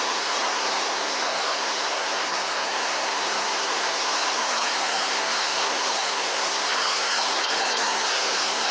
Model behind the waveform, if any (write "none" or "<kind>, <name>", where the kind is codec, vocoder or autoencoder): codec, SNAC